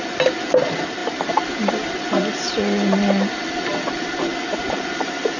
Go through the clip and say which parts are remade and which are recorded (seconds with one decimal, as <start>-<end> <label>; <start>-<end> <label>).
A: 0.0-5.4 recorded